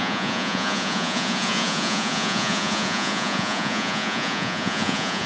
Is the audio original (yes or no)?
no